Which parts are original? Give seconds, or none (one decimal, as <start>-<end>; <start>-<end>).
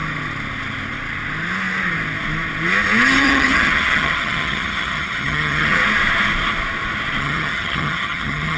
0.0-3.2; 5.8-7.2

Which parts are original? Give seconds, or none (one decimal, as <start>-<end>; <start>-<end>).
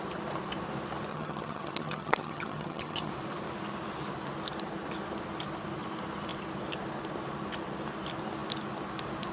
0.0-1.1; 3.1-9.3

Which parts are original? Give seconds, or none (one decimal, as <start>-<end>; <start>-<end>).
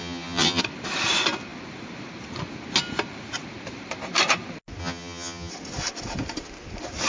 0.6-4.8; 5.5-7.1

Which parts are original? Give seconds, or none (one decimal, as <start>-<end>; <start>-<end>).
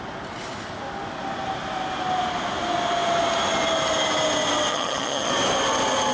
0.0-4.7; 5.3-6.1